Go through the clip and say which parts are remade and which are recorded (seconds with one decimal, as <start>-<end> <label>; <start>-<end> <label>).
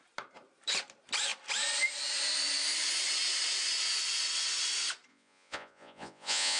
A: 0.0-5.1 recorded; 5.1-6.6 remade